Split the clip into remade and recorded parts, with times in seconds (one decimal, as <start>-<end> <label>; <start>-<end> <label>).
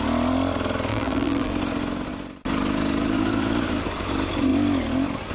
0.0-0.9 recorded; 0.9-1.5 remade; 1.5-5.3 recorded